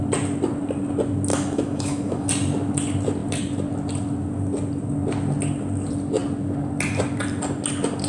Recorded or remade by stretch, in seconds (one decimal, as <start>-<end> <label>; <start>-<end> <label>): 0.0-1.3 recorded; 1.3-2.3 remade; 2.3-8.1 recorded